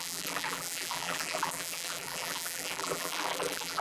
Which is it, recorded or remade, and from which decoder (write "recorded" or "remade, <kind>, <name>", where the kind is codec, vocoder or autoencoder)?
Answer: remade, vocoder, BigVGAN v2